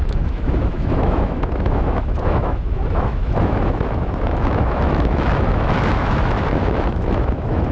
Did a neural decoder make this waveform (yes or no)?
yes